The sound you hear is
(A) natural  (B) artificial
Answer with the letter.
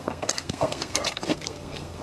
B